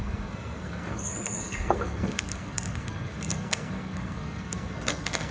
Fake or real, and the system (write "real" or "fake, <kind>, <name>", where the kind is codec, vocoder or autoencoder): fake, codec, SNAC